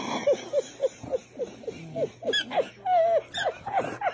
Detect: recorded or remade recorded